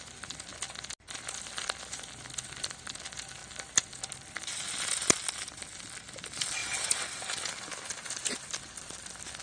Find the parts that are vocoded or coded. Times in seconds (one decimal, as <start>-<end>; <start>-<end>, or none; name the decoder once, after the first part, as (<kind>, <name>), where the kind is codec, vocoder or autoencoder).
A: none